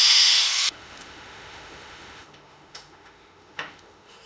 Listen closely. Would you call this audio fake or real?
fake